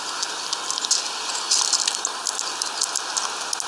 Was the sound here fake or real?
real